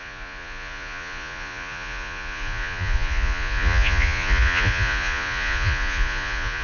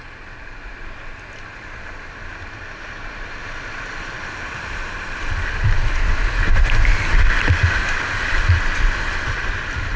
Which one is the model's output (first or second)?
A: first